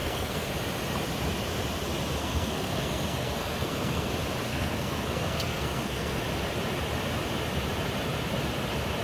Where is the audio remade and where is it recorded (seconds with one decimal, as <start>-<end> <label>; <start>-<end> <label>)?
0.0-0.5 remade; 0.5-2.2 recorded; 2.2-4.1 remade; 4.1-4.5 recorded; 4.5-6.2 remade; 6.2-9.0 recorded